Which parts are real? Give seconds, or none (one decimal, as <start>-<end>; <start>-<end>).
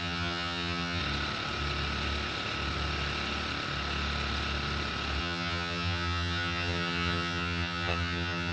1.0-5.2